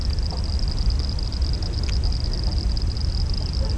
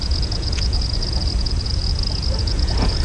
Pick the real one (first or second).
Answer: first